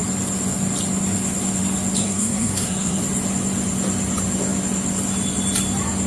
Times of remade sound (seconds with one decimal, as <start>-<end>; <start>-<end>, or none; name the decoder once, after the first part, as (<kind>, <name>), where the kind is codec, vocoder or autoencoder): 2.0-3.0 (codec, SNAC)